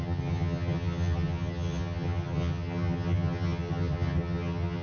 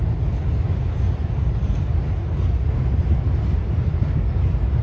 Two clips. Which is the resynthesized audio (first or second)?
first